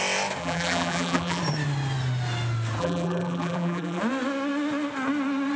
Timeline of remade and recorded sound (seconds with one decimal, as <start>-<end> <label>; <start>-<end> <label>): 0.0-0.4 recorded; 0.4-1.4 remade; 1.4-2.8 recorded; 2.8-4.0 remade; 4.0-5.6 recorded